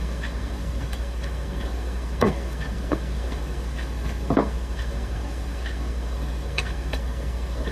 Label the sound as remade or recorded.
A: remade